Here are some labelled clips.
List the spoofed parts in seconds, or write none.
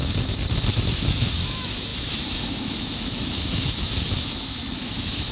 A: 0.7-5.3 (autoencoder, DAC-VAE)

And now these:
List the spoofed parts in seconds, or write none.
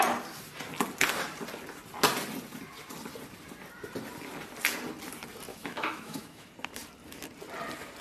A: 5.5-6.5 (autoencoder, DAC-VAE)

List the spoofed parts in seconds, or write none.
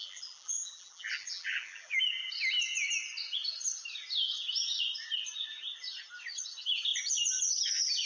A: 0.0-2.0 (vocoder, BigVGAN v2)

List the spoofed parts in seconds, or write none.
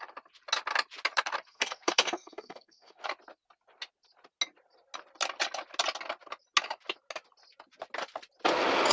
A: 1.5-3.0 (codec, SNAC)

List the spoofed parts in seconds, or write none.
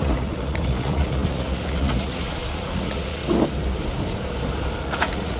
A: 0.0-3.2 (vocoder, Vocos); 4.8-5.4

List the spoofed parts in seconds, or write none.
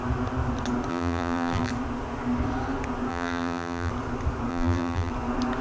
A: 0.9-1.7 (vocoder, BigVGAN v2); 3.1-3.9; 4.5-5.1